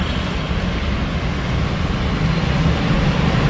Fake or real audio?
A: real